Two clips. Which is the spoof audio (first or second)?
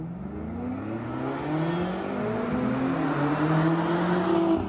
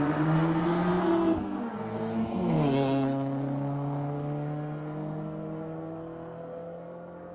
second